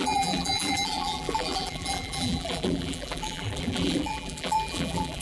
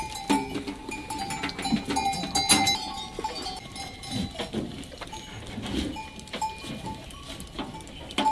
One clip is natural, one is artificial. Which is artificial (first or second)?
first